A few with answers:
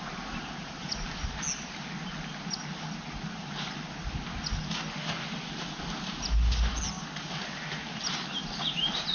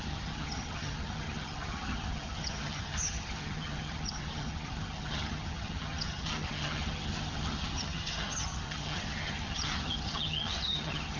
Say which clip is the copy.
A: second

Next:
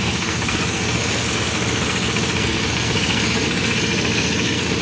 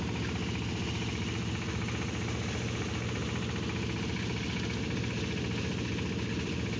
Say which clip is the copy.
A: first